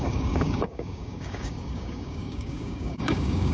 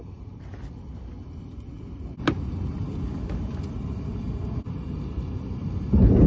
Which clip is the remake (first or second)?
first